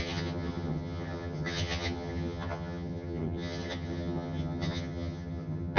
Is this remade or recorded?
remade